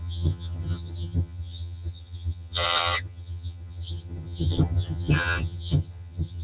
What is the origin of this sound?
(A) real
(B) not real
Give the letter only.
B